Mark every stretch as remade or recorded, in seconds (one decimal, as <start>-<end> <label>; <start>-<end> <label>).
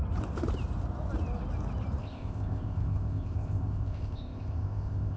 0.0-2.0 recorded; 2.0-5.2 remade